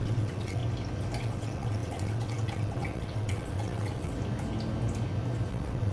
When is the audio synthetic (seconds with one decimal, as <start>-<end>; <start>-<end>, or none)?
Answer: 0.0-0.6; 1.2-4.1; 5.5-5.9